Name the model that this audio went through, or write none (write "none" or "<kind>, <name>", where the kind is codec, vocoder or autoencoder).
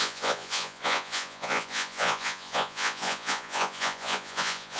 vocoder, Vocos